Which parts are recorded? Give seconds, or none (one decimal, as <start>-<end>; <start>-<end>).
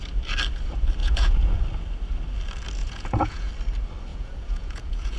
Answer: 0.0-1.0; 1.6-2.8; 3.5-4.1